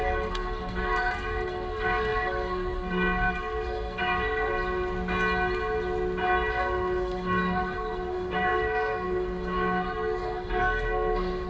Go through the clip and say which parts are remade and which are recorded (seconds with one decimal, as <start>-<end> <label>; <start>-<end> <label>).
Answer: 0.0-4.5 remade; 4.5-6.5 recorded; 6.5-11.5 remade